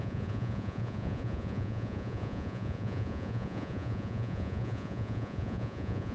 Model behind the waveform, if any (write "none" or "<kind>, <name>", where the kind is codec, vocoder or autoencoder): vocoder, Vocos